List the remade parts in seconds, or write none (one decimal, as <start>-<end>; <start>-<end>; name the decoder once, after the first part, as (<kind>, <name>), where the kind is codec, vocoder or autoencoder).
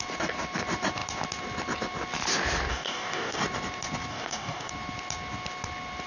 2.7-3.4 (codec, DAC); 4.1-4.7